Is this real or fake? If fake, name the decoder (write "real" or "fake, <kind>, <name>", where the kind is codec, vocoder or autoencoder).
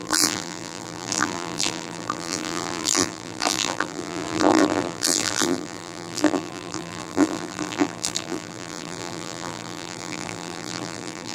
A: fake, vocoder, BigVGAN v2